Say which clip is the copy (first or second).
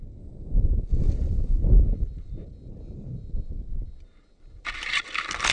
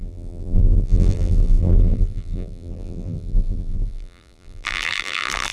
second